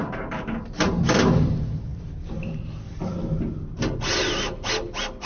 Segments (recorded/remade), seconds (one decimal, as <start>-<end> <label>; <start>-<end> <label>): 0.0-5.3 recorded